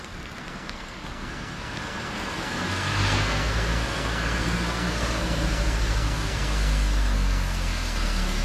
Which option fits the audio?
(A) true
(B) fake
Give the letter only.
B